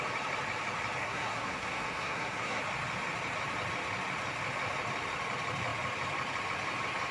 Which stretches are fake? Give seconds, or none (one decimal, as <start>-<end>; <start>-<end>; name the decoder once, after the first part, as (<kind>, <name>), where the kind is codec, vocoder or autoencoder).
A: 1.0-2.6 (codec, SNAC)